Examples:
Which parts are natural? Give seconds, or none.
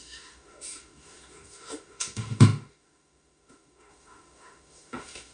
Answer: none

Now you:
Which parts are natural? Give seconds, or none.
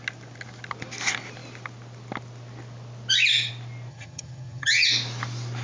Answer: 0.0-3.9; 4.9-5.6